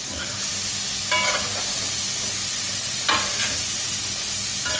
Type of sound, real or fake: real